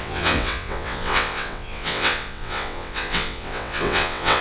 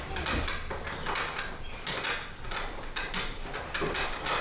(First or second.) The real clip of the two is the second